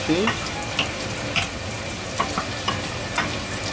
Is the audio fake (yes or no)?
no